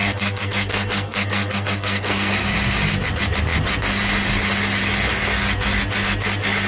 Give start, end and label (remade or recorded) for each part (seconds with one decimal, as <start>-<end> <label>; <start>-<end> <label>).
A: 0.0-2.3 remade; 2.3-6.7 recorded